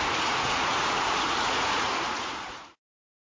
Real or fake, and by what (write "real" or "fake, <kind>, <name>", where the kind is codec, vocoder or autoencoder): fake, vocoder, Vocos